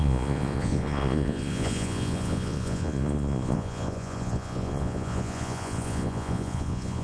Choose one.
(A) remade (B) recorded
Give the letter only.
A